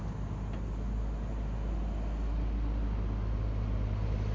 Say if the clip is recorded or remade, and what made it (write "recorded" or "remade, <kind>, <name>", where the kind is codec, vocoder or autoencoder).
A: recorded